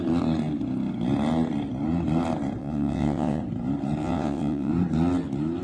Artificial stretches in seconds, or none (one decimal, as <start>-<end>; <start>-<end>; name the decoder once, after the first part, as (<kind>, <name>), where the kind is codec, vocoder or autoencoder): 2.6-3.4 (vocoder, WaveNeXt); 4.0-4.7